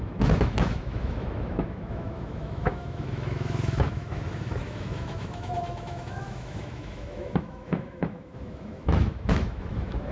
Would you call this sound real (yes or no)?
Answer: no